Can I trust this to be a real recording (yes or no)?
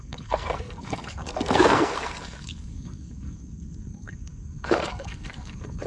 no